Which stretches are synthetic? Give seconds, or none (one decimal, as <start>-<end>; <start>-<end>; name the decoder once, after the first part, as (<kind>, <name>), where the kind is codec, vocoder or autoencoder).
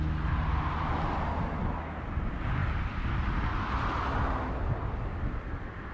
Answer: none